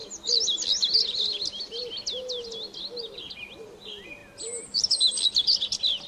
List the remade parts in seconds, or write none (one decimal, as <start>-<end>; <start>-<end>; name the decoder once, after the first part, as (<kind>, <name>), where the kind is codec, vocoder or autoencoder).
none